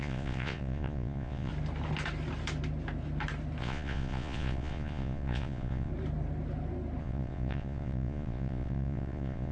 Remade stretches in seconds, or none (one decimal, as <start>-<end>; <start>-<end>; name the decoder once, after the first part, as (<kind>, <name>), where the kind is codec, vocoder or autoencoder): 0.0-1.5 (vocoder, Vocos); 3.6-5.9; 7.0-9.5